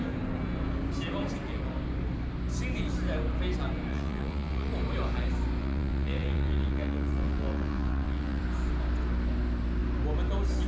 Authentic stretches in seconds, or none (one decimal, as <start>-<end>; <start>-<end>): 0.0-3.9; 4.7-5.6; 8.4-10.7